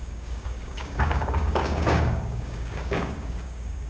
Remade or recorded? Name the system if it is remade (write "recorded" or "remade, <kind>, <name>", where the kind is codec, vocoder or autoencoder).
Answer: remade, codec, DAC